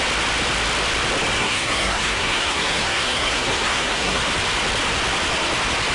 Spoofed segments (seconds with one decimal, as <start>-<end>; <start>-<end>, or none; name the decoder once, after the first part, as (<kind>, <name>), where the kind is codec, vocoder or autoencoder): 1.4-4.2 (codec, SNAC)